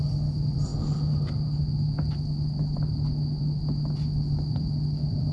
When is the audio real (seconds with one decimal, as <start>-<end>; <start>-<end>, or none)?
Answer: 0.7-3.9